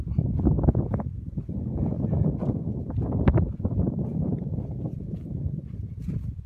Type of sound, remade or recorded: recorded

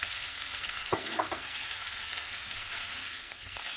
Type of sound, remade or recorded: remade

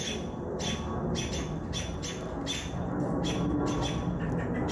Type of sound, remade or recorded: recorded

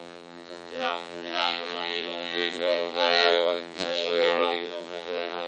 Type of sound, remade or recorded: remade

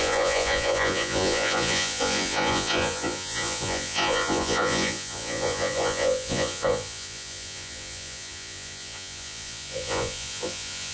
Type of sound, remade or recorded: remade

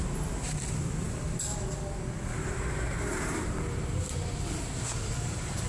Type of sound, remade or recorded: remade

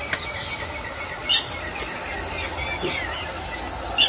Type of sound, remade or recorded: recorded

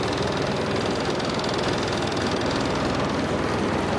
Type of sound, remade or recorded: recorded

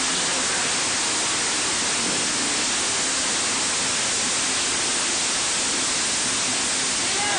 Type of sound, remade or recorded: recorded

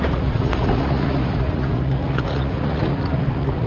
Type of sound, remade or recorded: remade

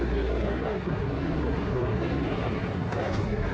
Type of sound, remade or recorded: remade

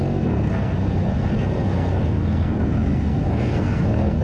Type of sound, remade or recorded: remade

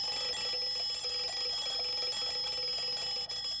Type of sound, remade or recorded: recorded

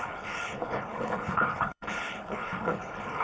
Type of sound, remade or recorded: remade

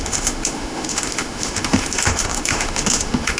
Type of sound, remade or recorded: remade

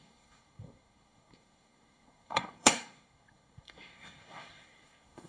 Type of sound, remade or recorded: remade